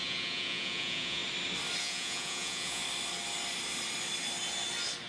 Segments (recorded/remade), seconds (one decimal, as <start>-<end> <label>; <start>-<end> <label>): 0.0-1.2 remade; 1.2-1.8 recorded; 1.8-2.8 remade; 2.8-5.1 recorded